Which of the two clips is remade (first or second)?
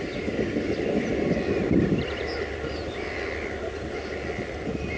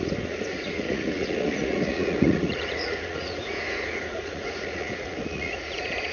second